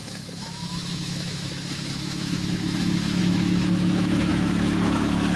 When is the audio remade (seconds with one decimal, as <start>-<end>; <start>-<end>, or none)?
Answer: 0.0-5.4